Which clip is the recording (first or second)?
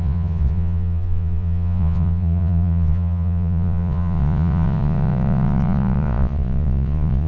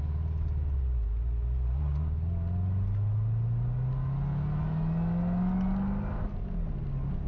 second